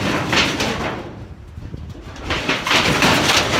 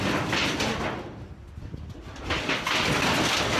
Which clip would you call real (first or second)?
second